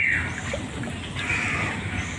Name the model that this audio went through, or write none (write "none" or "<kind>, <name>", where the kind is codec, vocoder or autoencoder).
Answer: vocoder, BigVGAN v2